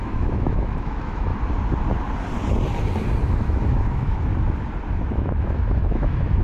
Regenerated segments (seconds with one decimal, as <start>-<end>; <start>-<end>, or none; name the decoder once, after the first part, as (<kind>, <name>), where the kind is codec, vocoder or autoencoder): 0.0-1.3 (autoencoder, DAC-VAE); 3.3-4.3; 5.1-6.4